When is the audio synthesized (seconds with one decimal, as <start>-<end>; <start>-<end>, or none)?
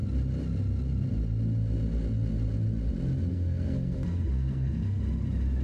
3.3-5.0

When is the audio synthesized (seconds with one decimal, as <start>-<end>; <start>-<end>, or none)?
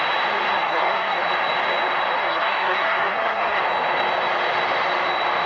0.5-1.2; 2.2-3.6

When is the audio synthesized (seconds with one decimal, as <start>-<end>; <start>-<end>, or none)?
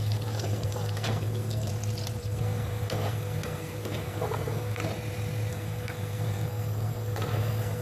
0.0-1.7; 2.2-4.8; 5.5-7.8